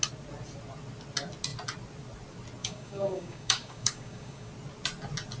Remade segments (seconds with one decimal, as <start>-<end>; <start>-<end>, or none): 2.6-4.5